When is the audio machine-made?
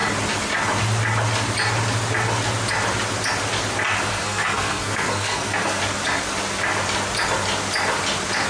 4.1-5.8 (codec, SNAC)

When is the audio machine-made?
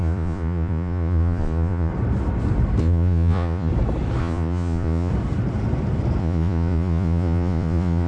0.0-1.9 (vocoder, Vocos); 2.8-3.7; 4.2-5.1; 6.2-8.1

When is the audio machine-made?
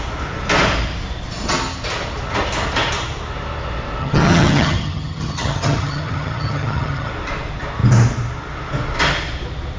4.0-7.1 (vocoder, HiFi-GAN)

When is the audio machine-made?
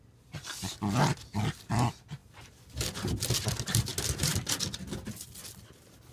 none